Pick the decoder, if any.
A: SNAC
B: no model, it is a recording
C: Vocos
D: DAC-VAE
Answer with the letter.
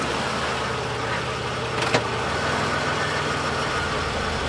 B